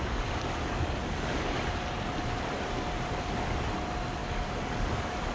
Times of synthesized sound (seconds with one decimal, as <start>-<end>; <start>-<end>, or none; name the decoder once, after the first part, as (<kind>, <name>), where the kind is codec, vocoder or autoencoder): 0.0-1.6 (codec, DAC); 4.2-5.3